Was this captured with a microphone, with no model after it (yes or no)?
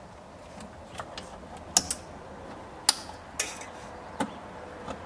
yes